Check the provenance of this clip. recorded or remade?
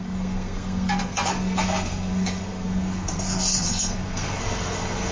remade